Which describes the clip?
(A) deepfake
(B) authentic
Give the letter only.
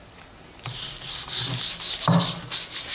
B